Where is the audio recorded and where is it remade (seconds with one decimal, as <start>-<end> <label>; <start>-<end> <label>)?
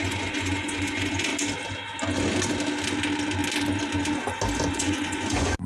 0.0-1.3 remade; 1.3-4.7 recorded; 4.7-5.7 remade